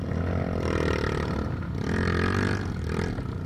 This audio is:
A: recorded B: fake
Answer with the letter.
A